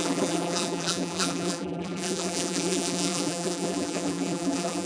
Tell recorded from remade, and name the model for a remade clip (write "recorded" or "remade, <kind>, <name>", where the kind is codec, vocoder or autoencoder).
remade, vocoder, BigVGAN v2